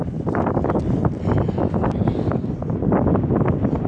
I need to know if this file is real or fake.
real